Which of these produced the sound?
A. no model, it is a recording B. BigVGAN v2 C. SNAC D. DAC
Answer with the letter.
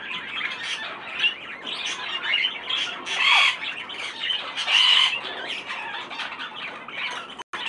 A